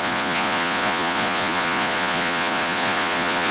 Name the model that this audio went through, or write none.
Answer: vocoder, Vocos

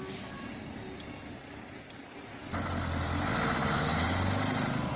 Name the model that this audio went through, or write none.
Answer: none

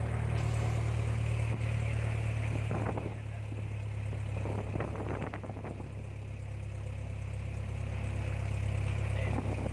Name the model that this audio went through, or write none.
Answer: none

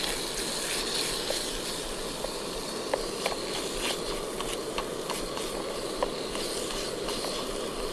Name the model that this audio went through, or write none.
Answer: none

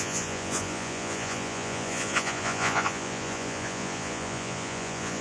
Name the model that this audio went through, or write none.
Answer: vocoder, Vocos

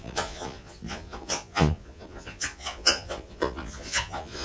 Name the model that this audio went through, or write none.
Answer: vocoder, Vocos